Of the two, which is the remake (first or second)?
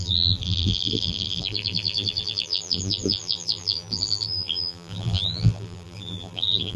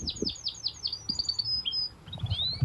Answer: first